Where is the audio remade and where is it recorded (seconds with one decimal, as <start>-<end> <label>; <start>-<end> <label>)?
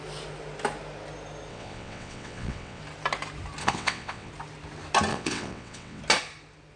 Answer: 0.0-1.5 recorded; 1.5-2.8 remade; 2.8-3.6 recorded; 3.6-4.3 remade; 4.3-5.1 recorded; 5.1-6.0 remade; 6.0-6.8 recorded